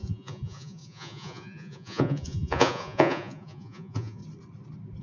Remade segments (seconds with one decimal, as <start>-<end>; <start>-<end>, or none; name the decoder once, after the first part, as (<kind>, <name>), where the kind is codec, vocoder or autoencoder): 0.0-4.2 (vocoder, Vocos)

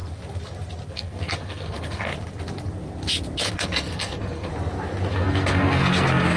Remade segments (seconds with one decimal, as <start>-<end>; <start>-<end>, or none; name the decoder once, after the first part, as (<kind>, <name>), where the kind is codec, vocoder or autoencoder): 0.9-2.1 (codec, SNAC); 3.5-4.5; 5.1-6.4

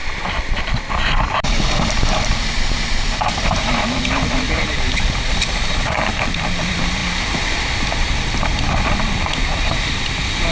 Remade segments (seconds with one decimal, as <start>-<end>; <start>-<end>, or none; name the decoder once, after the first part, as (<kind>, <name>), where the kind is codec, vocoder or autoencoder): 0.0-10.5 (vocoder, BigVGAN v2)

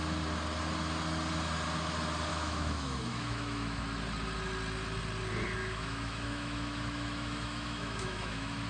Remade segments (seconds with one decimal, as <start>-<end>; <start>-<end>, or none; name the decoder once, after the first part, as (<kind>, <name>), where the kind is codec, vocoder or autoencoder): 2.3-3.8 (autoencoder, DAC-VAE); 5.6-8.7

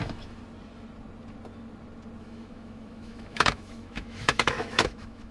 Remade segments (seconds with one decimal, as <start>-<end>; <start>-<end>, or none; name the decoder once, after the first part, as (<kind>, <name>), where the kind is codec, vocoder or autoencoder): 0.0-0.4 (autoencoder, DAC-VAE); 2.2-5.3

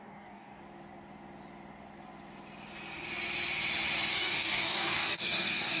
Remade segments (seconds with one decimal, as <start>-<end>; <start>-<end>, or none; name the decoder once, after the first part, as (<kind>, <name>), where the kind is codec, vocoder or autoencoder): 0.0-0.6 (codec, DAC); 4.1-5.8

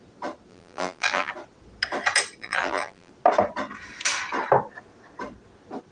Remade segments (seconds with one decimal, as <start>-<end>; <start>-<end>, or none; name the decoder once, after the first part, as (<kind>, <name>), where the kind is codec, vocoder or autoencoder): 0.5-1.3 (vocoder, BigVGAN v2); 2.4-3.1